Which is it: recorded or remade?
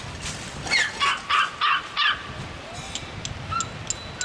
recorded